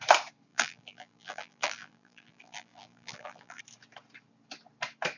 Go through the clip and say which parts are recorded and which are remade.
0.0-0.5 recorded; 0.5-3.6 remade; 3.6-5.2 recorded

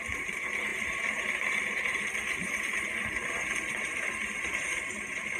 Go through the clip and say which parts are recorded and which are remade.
0.0-3.2 remade; 3.2-3.7 recorded; 3.7-5.4 remade